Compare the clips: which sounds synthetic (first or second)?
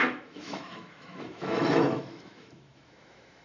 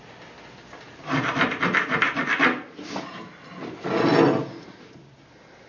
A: first